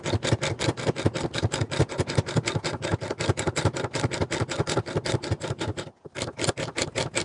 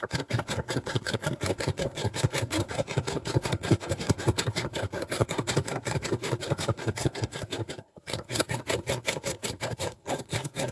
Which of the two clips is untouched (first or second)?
first